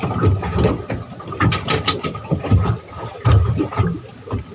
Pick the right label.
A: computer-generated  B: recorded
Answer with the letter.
B